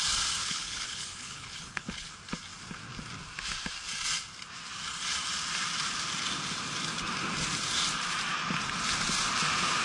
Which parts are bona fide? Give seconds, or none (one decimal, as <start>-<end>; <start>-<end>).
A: 0.0-0.4; 2.1-9.8